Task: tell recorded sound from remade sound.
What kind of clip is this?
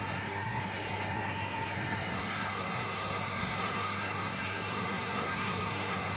remade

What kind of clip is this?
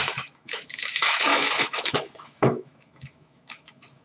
remade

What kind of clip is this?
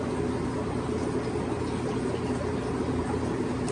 recorded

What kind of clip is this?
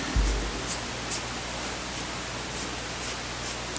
recorded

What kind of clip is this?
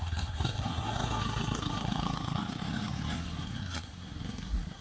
remade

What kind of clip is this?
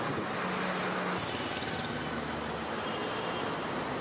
recorded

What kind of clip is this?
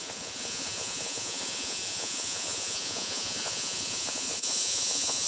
remade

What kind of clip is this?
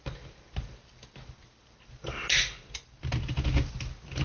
recorded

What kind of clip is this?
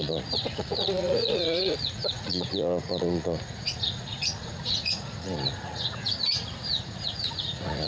remade